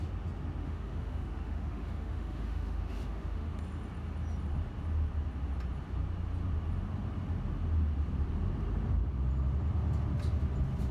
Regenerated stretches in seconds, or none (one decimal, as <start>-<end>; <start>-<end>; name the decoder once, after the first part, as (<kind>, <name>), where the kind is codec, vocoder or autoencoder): 0.6-3.6 (autoencoder, DAC-VAE)